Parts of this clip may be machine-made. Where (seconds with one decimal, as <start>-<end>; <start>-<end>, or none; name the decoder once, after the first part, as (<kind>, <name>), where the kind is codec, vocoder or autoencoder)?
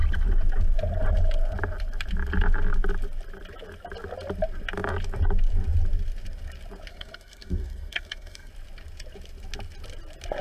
6.9-8.5 (codec, SNAC)